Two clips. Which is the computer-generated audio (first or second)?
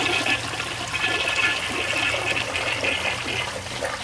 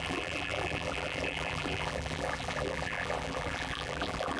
second